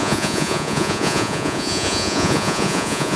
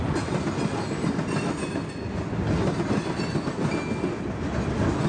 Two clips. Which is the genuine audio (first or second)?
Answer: second